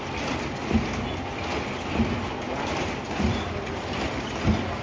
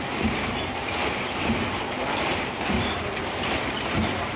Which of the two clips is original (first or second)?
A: first